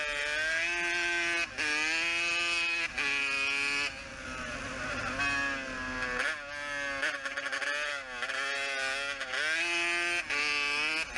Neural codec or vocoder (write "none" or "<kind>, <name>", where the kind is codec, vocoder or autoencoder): none